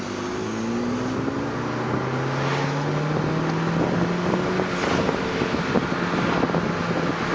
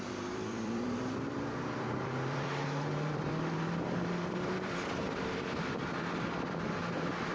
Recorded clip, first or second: first